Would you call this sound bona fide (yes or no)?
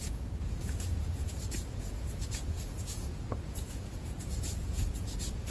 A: no